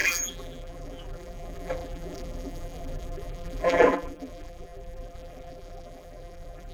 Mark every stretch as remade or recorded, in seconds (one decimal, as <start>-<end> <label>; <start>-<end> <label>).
0.0-6.7 remade